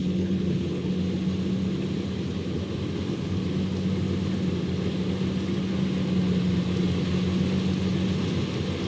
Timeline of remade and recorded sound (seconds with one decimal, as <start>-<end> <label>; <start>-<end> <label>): 0.0-0.9 remade; 0.9-8.9 recorded